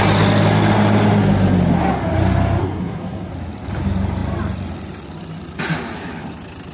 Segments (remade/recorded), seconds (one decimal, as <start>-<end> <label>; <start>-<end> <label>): 0.0-2.6 recorded; 2.6-3.3 remade; 3.3-6.7 recorded